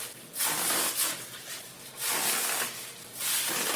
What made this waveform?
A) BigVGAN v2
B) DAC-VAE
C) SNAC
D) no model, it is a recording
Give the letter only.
D